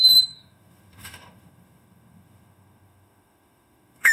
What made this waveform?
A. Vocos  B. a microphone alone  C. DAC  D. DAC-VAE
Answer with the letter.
D